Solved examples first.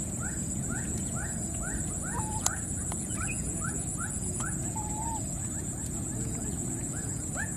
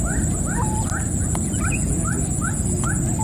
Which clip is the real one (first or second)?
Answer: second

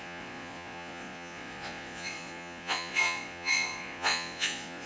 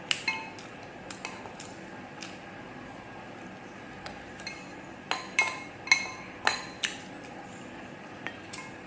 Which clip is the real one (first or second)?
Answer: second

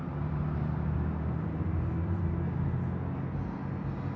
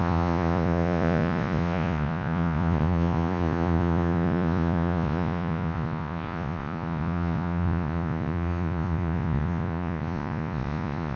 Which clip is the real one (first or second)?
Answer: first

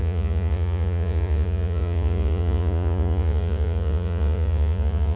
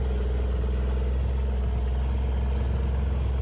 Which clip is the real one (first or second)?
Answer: second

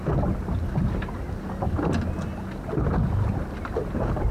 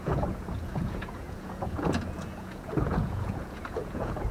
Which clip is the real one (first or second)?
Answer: first